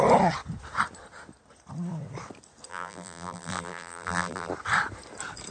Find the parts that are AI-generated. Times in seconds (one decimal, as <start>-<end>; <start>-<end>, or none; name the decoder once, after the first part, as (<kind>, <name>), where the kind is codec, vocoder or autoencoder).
2.7-4.5 (vocoder, BigVGAN v2)